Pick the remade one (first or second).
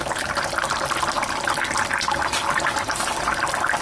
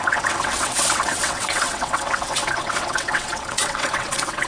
second